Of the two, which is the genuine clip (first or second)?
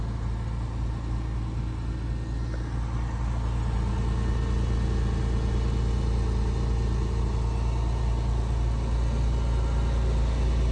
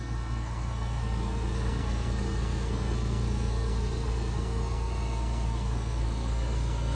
first